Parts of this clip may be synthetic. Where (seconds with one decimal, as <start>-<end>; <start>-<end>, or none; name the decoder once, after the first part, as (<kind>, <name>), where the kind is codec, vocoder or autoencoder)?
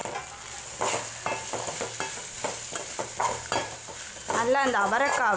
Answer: 3.2-4.0 (vocoder, BigVGAN v2)